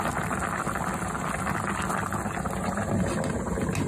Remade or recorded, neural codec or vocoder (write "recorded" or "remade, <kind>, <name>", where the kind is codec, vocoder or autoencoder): recorded